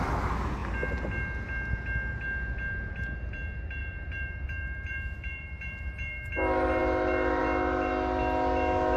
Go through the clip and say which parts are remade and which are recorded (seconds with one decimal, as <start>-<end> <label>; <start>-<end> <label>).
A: 0.0-3.8 recorded; 3.8-6.3 remade; 6.3-9.0 recorded